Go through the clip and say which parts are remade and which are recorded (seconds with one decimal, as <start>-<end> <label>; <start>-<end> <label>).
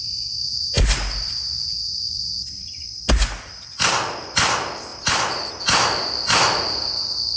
0.0-7.4 recorded